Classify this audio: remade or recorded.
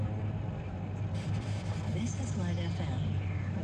recorded